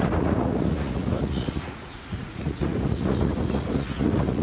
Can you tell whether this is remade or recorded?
remade